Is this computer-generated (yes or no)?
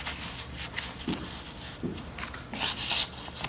no